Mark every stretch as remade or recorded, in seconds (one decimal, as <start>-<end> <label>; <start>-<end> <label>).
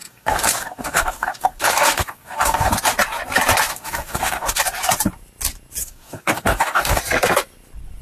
0.0-2.7 remade; 2.7-3.7 recorded; 3.7-4.6 remade; 4.6-5.8 recorded; 5.8-7.0 remade; 7.0-8.0 recorded